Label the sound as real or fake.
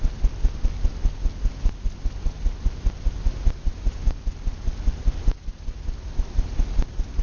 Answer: real